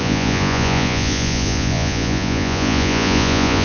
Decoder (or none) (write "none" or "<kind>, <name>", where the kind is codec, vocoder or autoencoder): vocoder, Vocos